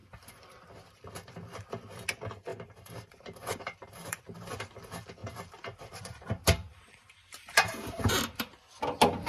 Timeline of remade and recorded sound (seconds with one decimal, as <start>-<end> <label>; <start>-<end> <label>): 0.0-2.5 recorded; 2.5-4.2 remade; 4.2-5.2 recorded; 5.2-8.1 remade; 8.1-9.3 recorded